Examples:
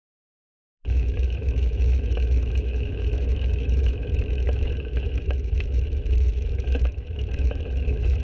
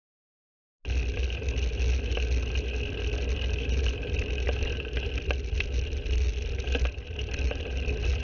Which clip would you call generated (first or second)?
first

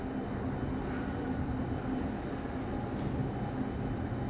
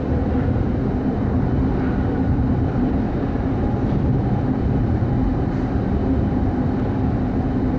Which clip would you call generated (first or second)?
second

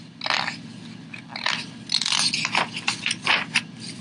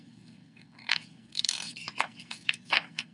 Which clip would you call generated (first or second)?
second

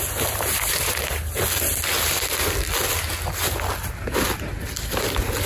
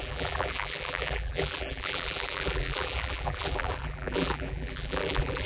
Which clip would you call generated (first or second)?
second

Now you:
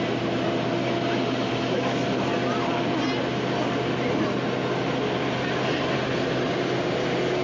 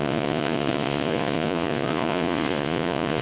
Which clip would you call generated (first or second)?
second